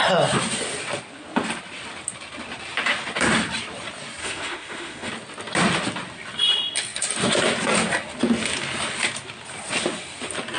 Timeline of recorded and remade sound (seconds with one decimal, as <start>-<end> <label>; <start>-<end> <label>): 0.0-4.2 recorded; 4.2-5.1 remade; 5.1-10.6 recorded